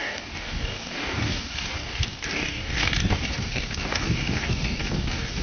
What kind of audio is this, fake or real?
fake